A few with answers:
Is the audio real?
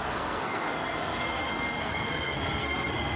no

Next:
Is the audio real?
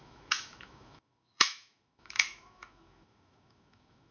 no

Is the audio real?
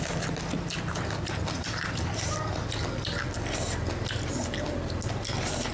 yes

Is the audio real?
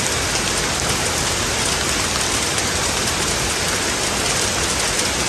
yes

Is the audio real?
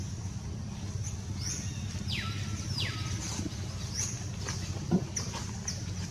yes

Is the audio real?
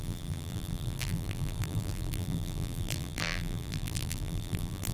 no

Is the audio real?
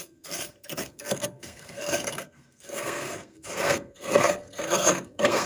no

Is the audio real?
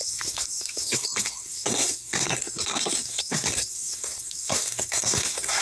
no